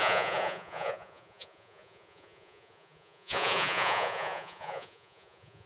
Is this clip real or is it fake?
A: fake